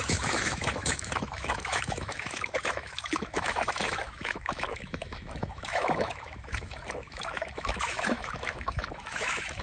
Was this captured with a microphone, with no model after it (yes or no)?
no